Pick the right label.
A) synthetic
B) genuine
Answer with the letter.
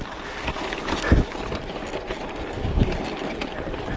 B